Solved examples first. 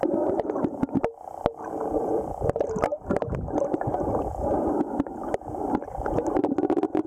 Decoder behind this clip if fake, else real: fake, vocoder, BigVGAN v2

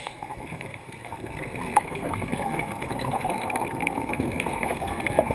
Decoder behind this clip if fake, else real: fake, codec, SNAC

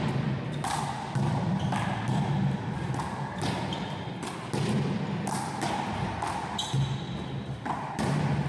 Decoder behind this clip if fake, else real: real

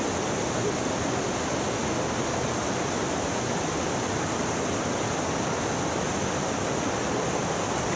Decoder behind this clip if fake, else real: real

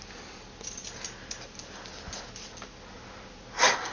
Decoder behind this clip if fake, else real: real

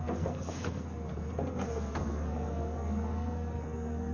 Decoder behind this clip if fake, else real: fake, codec, SNAC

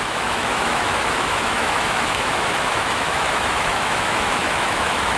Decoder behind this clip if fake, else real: fake, autoencoder, DAC-VAE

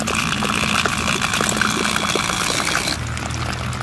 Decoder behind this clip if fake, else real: real